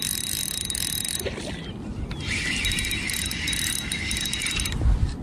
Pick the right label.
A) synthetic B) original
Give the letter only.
B